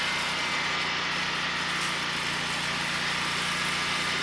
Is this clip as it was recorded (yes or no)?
yes